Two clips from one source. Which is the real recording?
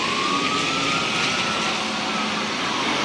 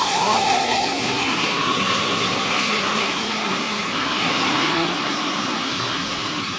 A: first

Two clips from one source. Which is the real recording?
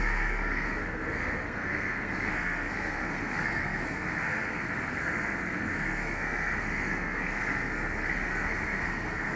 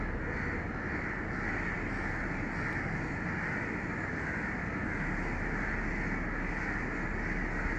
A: second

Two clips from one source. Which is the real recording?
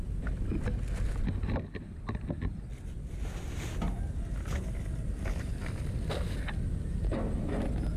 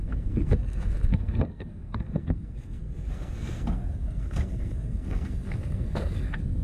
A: first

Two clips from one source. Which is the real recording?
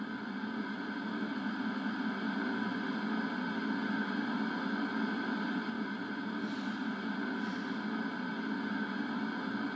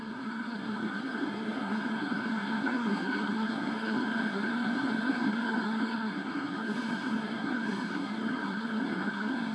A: first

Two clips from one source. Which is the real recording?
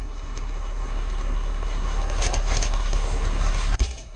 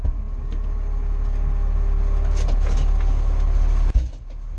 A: second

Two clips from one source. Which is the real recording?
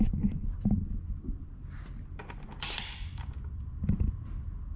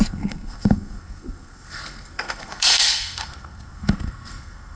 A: first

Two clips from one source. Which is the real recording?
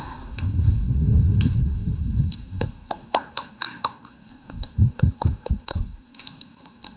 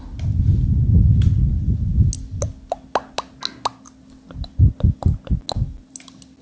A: second